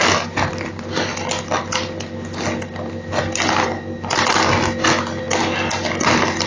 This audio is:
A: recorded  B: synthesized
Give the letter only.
A